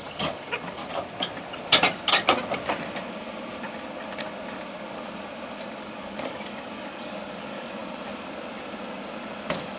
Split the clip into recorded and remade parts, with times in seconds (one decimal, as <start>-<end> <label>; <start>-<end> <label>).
0.0-0.8 remade; 0.8-5.8 recorded; 5.8-7.8 remade; 7.8-9.8 recorded